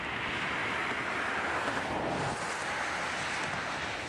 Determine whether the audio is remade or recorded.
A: recorded